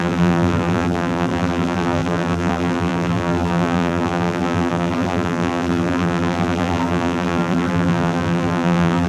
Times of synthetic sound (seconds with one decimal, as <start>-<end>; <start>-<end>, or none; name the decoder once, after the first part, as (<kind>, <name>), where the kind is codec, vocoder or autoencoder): 0.0-9.1 (vocoder, BigVGAN v2)